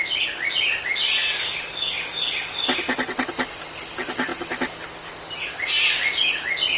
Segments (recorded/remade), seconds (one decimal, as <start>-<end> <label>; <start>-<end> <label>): 0.0-6.8 recorded